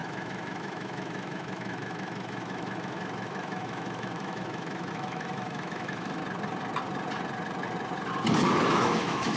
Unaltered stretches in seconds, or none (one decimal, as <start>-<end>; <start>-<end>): 6.2-8.7